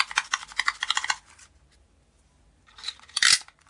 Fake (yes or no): no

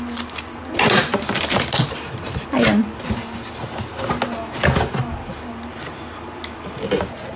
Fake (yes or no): no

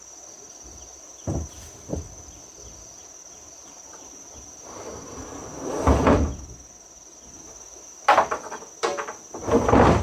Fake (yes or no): no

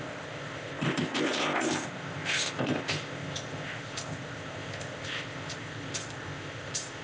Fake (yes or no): yes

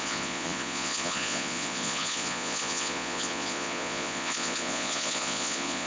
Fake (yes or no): yes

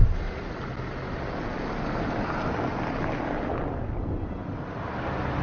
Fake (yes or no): no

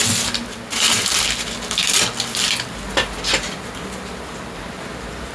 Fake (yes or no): no